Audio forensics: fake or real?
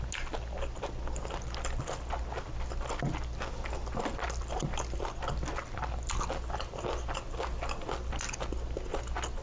real